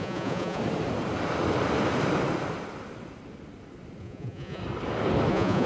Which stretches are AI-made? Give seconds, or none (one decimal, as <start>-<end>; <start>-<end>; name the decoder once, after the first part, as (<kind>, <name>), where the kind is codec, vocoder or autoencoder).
0.0-0.6 (vocoder, Vocos); 4.0-4.6; 5.3-5.7